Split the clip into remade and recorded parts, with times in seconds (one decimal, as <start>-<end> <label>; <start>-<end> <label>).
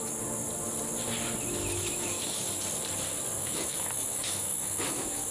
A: 0.0-1.6 recorded; 1.6-2.5 remade; 2.5-3.4 recorded; 3.4-5.3 remade